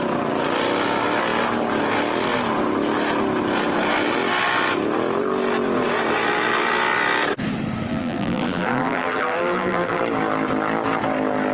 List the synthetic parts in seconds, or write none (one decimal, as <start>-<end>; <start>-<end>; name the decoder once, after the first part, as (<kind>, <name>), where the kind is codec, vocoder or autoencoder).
7.9-10.0 (vocoder, BigVGAN v2)

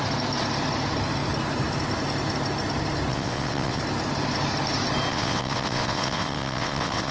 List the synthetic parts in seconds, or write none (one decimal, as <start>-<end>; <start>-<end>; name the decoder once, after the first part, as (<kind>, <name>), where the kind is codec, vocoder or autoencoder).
3.1-3.8 (vocoder, WaveNeXt); 5.1-7.1

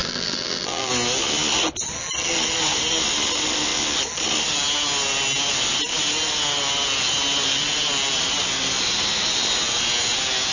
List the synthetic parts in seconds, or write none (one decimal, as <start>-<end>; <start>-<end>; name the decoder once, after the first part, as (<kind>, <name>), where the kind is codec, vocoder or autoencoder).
0.0-0.9 (vocoder, BigVGAN v2)